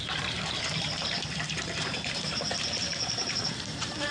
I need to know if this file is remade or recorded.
remade